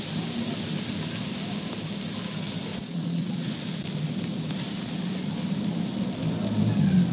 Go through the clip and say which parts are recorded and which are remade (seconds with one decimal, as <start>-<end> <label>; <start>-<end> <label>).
0.0-2.7 recorded; 2.7-3.5 remade; 3.5-7.1 recorded